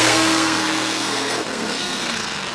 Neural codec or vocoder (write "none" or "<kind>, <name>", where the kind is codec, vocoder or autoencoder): codec, SNAC